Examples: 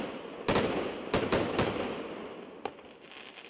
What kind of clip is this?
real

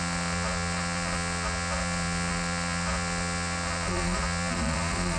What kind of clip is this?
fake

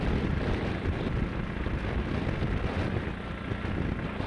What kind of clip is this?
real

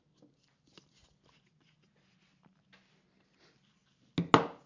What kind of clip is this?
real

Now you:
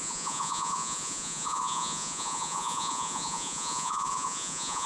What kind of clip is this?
fake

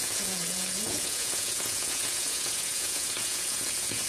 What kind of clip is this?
fake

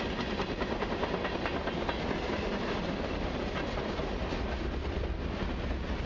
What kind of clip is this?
real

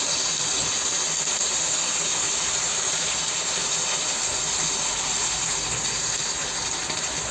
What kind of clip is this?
real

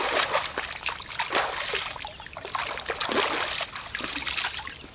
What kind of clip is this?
real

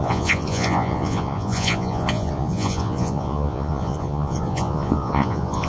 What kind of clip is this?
fake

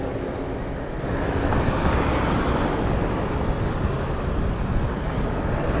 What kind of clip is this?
real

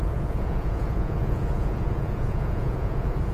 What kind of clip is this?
fake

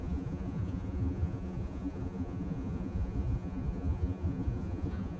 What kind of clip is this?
fake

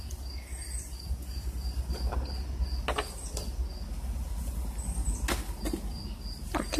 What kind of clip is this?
real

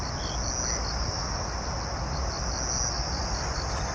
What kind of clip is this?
real